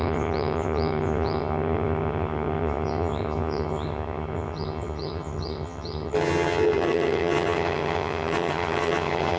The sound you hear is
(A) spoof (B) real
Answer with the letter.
A